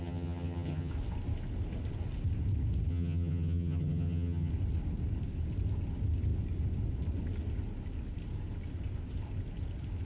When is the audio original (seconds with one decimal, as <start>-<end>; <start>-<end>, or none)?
0.9-2.9; 4.5-10.0